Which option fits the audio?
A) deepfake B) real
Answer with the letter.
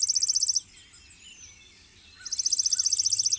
B